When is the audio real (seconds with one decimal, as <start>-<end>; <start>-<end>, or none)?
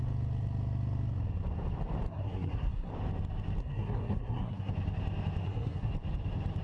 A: 0.0-2.1; 2.9-3.6; 4.7-5.4; 5.9-6.6